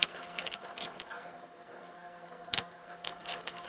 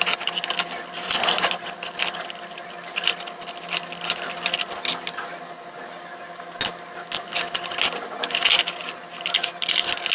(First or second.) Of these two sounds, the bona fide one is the second